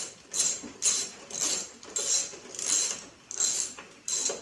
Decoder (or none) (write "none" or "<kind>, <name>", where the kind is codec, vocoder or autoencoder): none